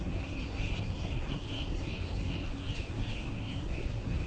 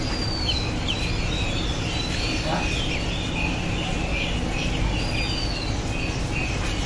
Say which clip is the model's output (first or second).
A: first